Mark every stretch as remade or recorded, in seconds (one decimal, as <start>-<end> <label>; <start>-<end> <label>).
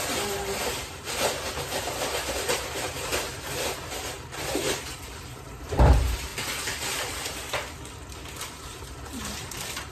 0.0-6.3 remade; 6.3-8.4 recorded; 8.4-9.9 remade